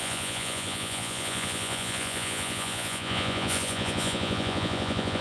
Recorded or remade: remade